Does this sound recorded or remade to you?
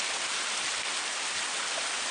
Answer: recorded